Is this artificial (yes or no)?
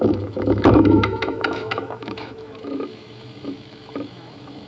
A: yes